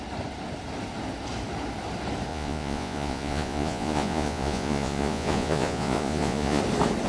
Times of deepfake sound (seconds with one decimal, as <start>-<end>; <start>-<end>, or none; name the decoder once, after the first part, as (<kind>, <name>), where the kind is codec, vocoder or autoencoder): 2.3-6.6 (vocoder, Vocos)